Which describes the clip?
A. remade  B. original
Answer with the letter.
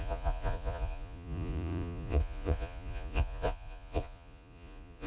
A